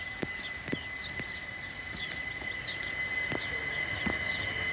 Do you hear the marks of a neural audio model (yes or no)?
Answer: no